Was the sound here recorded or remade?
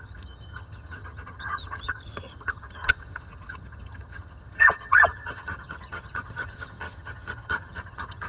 remade